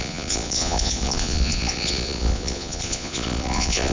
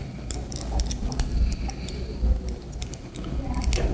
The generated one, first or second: first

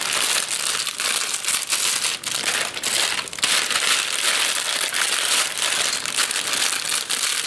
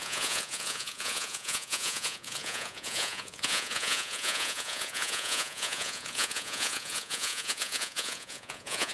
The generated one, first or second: second